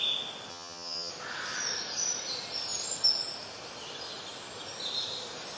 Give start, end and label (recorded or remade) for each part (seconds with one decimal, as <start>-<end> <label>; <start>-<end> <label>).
0.0-0.5 recorded; 0.5-1.1 remade; 1.1-5.6 recorded